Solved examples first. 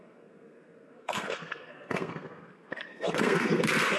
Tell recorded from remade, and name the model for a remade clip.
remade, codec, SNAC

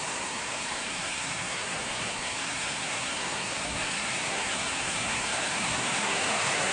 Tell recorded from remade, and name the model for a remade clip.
remade, codec, SNAC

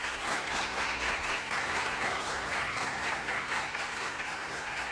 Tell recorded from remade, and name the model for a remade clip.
remade, codec, SNAC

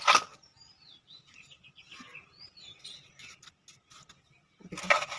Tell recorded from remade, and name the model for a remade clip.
recorded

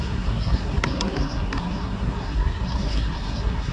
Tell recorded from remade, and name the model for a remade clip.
remade, codec, SNAC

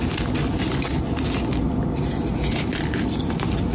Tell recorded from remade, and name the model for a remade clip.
recorded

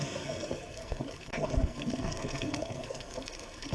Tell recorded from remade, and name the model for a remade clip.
remade, codec, SNAC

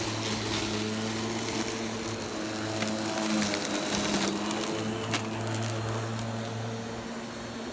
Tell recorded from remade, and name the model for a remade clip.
recorded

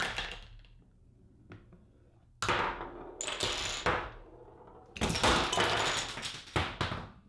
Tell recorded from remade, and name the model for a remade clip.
recorded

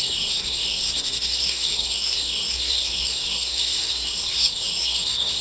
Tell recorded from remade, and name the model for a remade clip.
remade, codec, SNAC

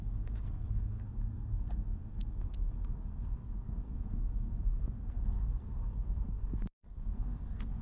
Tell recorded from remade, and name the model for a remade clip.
remade, codec, SNAC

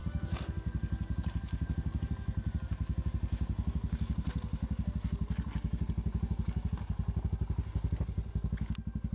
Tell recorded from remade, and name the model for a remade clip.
recorded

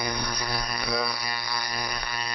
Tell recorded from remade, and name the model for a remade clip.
remade, codec, SNAC